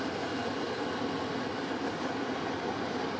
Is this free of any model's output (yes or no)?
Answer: yes